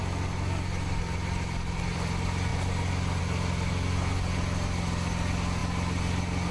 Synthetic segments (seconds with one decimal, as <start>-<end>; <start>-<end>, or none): none